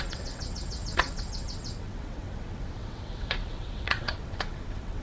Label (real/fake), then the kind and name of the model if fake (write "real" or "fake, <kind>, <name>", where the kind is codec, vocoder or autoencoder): fake, vocoder, WaveNeXt